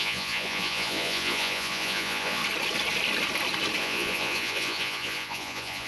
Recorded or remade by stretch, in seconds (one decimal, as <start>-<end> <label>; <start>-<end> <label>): 0.0-2.4 remade; 2.4-3.8 recorded; 3.8-5.9 remade